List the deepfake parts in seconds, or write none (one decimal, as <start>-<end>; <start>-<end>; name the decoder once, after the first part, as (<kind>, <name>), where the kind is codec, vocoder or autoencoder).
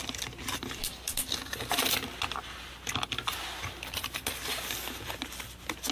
none